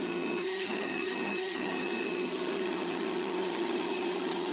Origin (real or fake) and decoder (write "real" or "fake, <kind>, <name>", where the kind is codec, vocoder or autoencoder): fake, vocoder, HiFi-GAN